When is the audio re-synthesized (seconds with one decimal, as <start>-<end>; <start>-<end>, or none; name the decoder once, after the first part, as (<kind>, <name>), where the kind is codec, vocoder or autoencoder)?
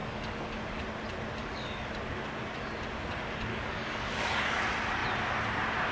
0.0-0.8 (codec, DAC); 1.4-1.9; 3.5-4.6